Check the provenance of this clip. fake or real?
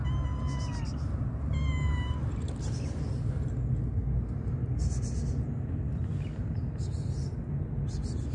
real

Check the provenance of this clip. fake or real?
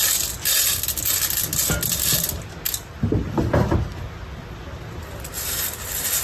real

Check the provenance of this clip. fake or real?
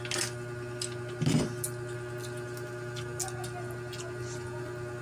real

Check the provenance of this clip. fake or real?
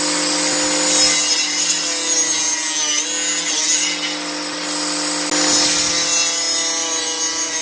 real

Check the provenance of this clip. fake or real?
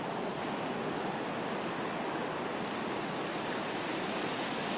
real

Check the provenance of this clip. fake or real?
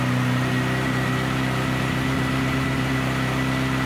real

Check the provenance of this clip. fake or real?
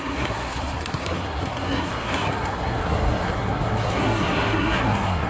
fake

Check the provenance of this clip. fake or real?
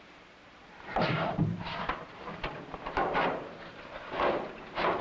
fake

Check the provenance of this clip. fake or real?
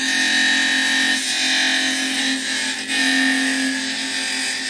real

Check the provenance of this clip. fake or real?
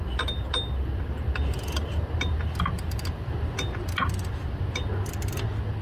real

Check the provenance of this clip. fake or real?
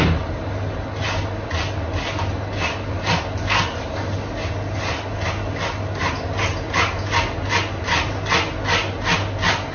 real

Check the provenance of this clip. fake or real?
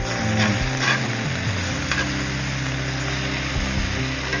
real